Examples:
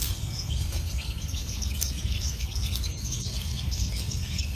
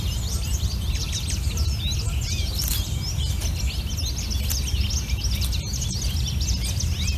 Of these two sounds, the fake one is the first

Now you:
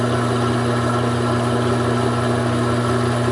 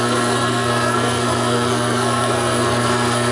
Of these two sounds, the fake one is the second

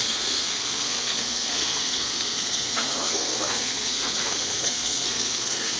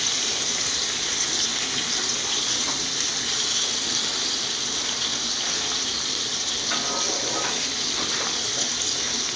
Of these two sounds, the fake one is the first